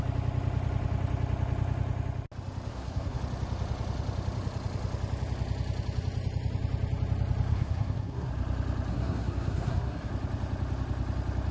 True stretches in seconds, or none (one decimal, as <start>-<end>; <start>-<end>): 0.0-2.7; 3.2-7.5; 8.3-8.9; 10.1-11.5